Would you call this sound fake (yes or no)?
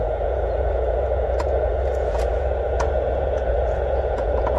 yes